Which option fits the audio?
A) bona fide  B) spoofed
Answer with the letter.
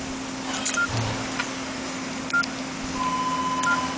A